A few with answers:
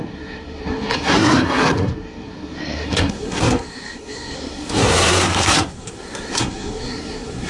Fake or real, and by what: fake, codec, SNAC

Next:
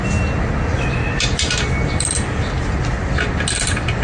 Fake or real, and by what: real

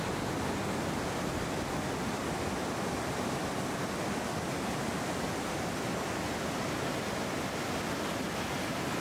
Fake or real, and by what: real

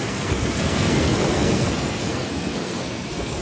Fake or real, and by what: fake, codec, SNAC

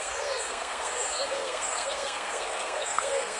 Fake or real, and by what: fake, codec, SNAC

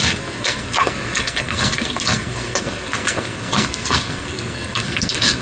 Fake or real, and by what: fake, codec, SNAC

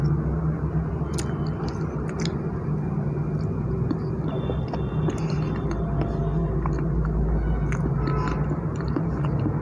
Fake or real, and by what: real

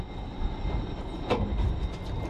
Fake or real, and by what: real